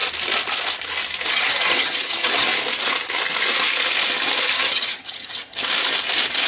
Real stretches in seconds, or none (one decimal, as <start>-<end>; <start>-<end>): 0.0-1.3; 2.5-4.5; 5.6-6.5